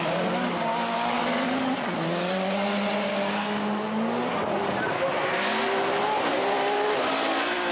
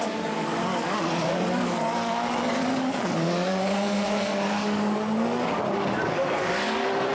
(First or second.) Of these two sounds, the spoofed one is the second